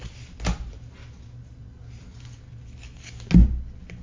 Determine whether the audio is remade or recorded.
recorded